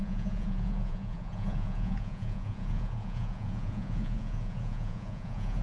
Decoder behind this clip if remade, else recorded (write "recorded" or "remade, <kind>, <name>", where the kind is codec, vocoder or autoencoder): remade, vocoder, Vocos